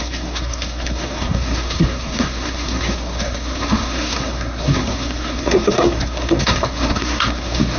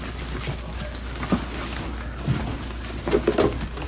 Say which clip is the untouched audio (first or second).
second